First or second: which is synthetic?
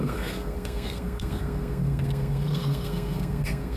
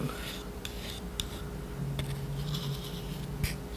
first